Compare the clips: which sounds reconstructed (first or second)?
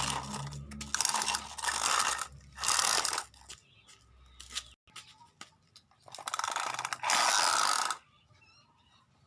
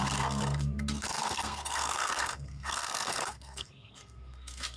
second